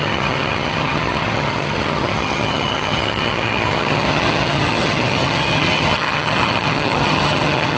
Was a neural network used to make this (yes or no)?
yes